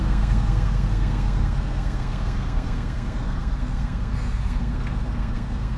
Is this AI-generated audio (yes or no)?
yes